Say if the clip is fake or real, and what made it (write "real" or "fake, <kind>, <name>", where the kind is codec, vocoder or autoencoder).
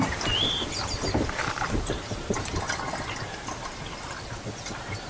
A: real